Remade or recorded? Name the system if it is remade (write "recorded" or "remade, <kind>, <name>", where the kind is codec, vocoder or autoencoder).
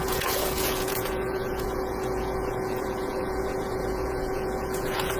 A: remade, vocoder, Vocos